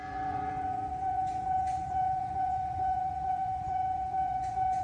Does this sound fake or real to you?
fake